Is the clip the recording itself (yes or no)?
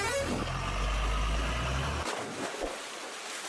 yes